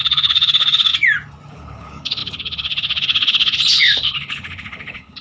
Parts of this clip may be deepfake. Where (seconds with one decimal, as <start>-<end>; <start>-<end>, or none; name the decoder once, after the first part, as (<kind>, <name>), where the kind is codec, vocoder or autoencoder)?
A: 0.0-0.9 (codec, HILCodec); 1.5-5.2